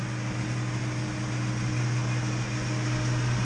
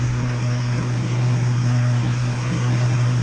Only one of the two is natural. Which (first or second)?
first